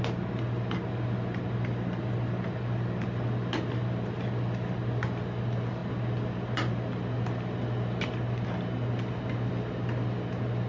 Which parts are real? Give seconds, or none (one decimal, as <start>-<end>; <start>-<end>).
0.0-10.7